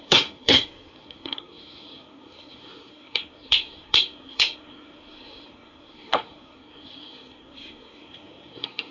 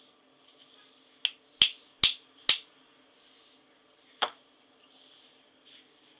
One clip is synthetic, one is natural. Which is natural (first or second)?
second